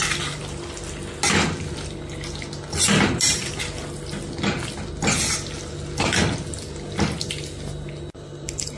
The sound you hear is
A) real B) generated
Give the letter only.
A